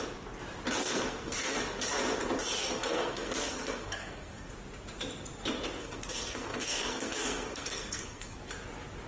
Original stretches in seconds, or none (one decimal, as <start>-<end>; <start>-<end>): 0.0-0.8; 1.6-2.6; 4.5-5.8; 8.4-9.1